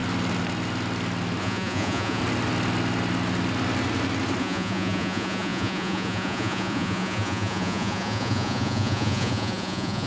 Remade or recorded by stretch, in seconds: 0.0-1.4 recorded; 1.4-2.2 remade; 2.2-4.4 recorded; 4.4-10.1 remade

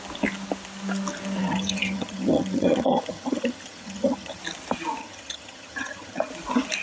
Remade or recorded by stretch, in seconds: 0.0-1.4 recorded; 1.4-4.4 remade; 4.4-5.0 recorded; 5.0-6.3 remade; 6.3-6.8 recorded

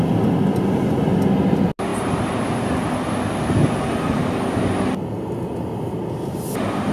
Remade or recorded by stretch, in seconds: 0.0-6.9 recorded

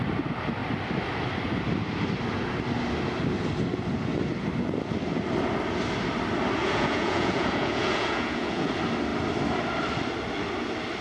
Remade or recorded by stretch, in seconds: 0.0-6.6 recorded; 6.6-8.7 remade; 8.7-11.0 recorded

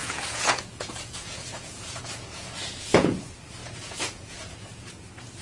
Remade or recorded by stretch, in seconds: 0.0-3.2 remade; 3.2-3.6 recorded; 3.6-5.0 remade; 5.0-5.4 recorded